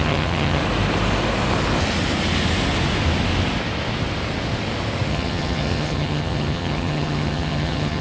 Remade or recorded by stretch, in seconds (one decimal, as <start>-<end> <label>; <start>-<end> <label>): 0.0-0.6 remade; 0.6-5.1 recorded; 5.1-8.0 remade